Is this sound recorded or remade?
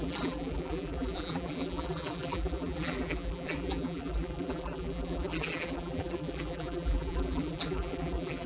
remade